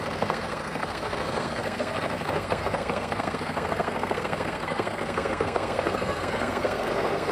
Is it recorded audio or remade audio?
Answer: remade